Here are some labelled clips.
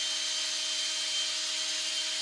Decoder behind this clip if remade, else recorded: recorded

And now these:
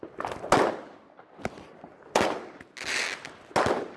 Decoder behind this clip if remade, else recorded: recorded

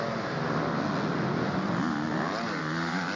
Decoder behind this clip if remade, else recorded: recorded